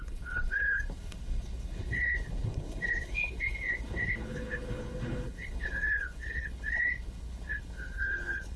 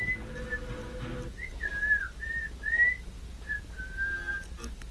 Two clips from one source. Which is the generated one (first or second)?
first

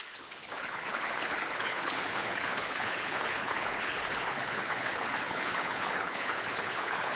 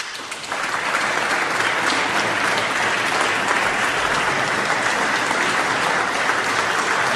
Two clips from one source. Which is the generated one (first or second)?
first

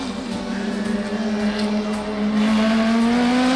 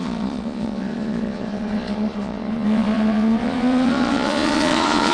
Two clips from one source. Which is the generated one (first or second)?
second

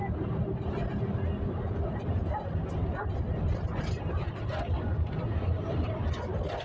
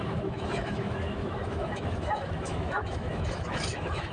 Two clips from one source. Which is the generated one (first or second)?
second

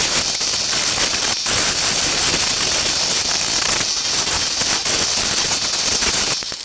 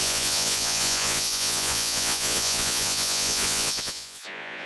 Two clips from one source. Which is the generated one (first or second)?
second